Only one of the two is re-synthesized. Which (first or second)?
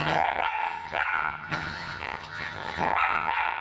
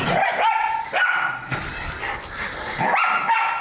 first